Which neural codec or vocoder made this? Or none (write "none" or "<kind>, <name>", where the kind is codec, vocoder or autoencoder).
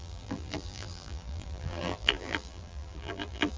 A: vocoder, BigVGAN v2